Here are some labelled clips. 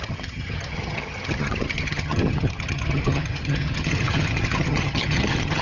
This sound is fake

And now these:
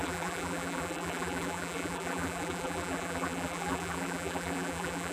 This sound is fake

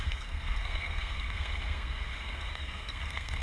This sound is fake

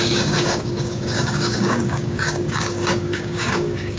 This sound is fake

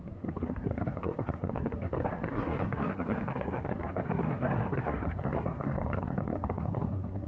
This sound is fake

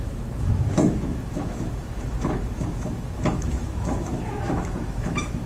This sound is fake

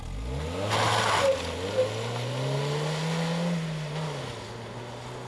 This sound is real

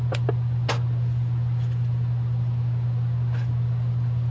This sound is real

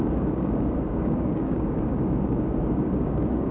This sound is fake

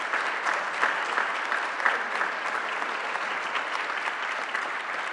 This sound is real